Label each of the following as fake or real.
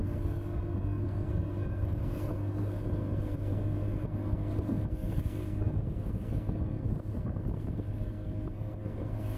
fake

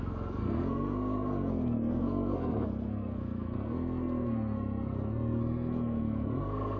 fake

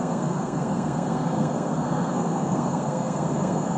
fake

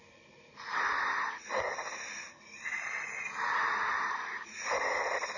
real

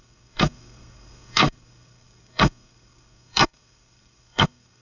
fake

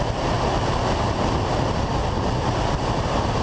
real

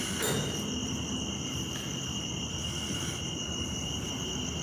real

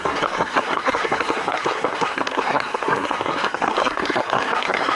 fake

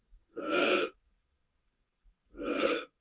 fake